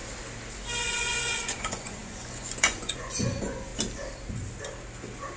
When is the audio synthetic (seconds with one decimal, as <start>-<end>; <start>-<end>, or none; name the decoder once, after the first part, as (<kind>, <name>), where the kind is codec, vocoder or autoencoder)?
0.8-3.7 (vocoder, Vocos)